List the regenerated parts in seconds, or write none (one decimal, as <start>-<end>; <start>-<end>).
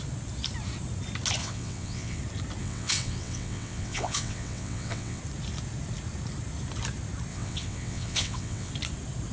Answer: 1.4-2.2; 2.6-5.2; 7.3-8.7